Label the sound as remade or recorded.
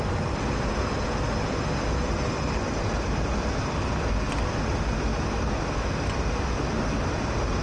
recorded